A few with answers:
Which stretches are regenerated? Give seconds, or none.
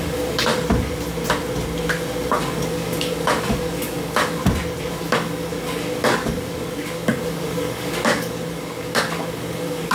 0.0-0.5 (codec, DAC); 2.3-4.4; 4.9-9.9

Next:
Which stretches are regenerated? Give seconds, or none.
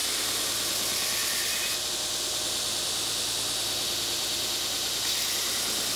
none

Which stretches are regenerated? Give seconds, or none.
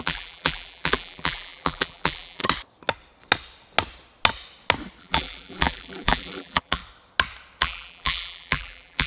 0.0-2.4 (vocoder, BigVGAN v2); 5.0-6.8; 7.6-9.1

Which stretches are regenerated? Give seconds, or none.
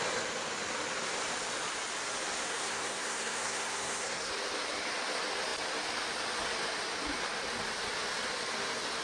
2.5-4.3 (codec, SNAC)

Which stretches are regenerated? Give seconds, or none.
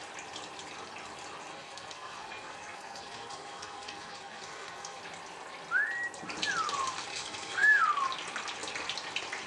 1.5-5.0 (codec, SNAC); 7.1-7.8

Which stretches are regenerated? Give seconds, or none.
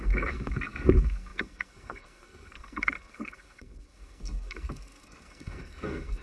0.0-6.2 (codec, SNAC)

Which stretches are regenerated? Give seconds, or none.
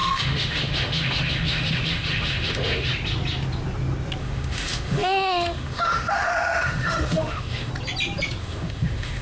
0.0-2.9 (autoencoder, DAC-VAE); 4.2-7.7; 8.4-9.2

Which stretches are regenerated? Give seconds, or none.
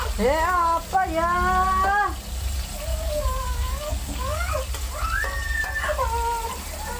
2.9-4.5 (codec, DAC)